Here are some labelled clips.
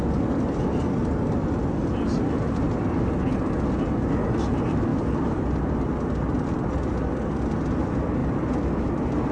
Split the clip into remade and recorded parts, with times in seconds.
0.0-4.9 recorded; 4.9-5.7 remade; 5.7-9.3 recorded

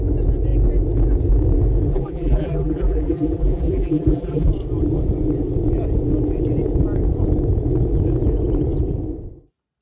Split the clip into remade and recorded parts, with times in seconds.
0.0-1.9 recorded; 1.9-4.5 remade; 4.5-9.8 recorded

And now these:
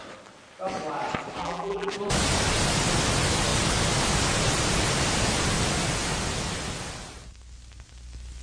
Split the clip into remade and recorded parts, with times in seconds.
0.0-1.4 recorded; 1.4-1.9 remade; 1.9-8.4 recorded

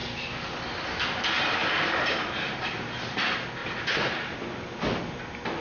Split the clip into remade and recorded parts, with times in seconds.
0.0-1.6 recorded; 1.6-3.2 remade; 3.2-3.6 recorded; 3.6-4.6 remade; 4.6-5.6 recorded

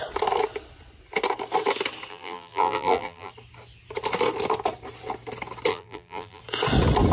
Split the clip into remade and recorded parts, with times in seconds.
0.0-2.1 recorded; 2.1-3.3 remade; 3.3-5.7 recorded; 5.7-6.4 remade; 6.4-7.1 recorded

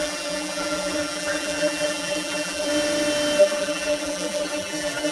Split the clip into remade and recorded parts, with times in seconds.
0.0-2.7 remade; 2.7-3.4 recorded; 3.4-5.1 remade

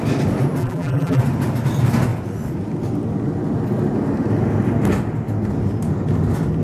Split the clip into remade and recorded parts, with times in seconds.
0.0-0.6 recorded; 0.6-1.2 remade; 1.2-6.6 recorded